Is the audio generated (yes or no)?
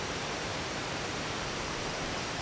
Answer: yes